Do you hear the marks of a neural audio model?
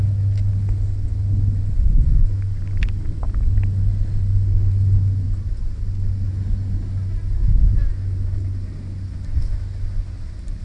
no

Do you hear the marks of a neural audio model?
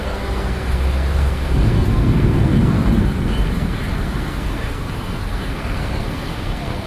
yes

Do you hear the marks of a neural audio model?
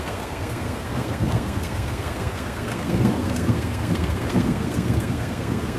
yes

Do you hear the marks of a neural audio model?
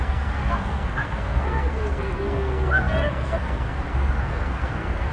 yes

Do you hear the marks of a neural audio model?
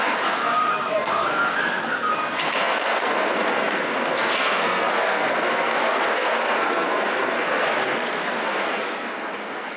yes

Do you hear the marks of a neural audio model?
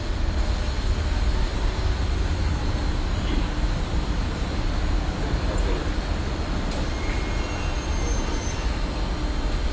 no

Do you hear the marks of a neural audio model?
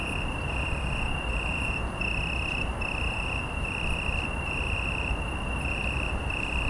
no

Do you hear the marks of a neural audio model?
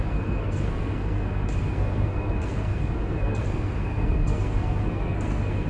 yes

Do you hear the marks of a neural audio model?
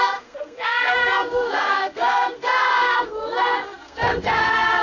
yes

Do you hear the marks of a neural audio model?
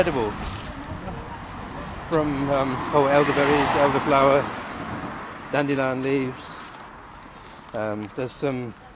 no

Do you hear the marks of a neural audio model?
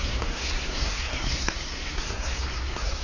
yes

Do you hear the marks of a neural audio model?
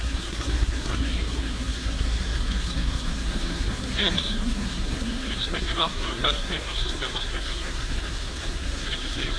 yes